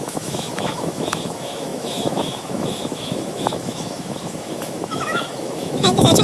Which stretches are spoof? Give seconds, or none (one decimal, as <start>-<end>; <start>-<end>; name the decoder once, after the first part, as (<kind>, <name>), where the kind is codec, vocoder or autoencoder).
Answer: 0.0-6.2 (autoencoder, DAC-VAE)